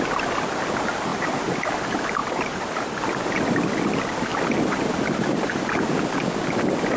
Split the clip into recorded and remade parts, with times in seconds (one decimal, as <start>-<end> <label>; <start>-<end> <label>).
0.0-1.1 recorded; 1.1-1.7 remade; 1.7-2.2 recorded; 2.2-3.0 remade; 3.0-4.3 recorded; 4.3-4.9 remade; 4.9-7.0 recorded